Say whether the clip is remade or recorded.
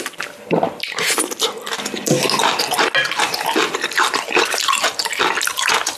recorded